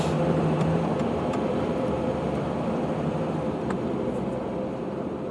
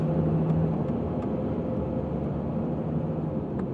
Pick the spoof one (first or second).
first